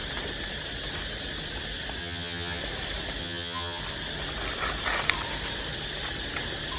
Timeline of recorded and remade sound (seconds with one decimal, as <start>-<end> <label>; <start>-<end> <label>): 0.0-2.0 recorded; 2.0-2.6 remade; 2.6-3.2 recorded; 3.2-3.8 remade; 3.8-6.8 recorded